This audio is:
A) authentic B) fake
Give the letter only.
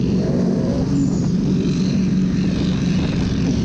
B